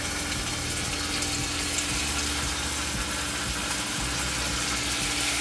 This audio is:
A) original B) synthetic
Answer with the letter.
A